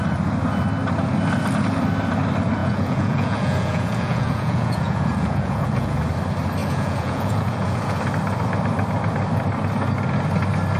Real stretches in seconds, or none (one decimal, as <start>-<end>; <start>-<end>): 0.0-2.6; 6.0-6.6; 8.0-10.8